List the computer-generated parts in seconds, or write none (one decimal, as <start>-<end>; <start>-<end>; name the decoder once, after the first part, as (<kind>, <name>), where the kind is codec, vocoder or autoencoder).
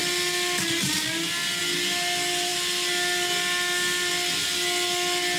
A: none